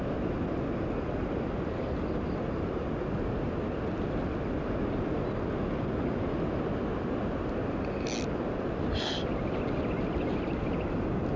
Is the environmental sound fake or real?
real